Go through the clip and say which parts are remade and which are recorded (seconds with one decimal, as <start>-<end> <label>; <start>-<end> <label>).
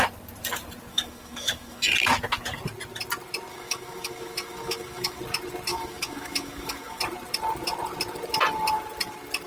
0.0-0.9 recorded; 0.9-1.9 remade; 1.9-3.5 recorded; 3.5-5.2 remade; 5.2-5.7 recorded; 5.7-7.0 remade; 7.0-9.5 recorded